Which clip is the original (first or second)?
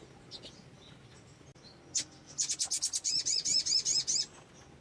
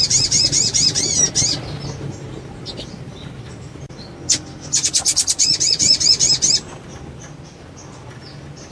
first